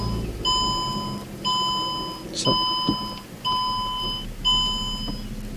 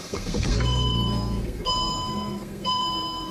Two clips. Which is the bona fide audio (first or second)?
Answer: first